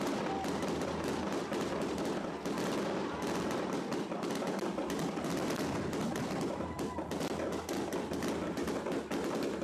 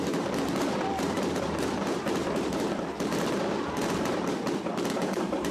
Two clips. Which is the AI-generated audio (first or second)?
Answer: second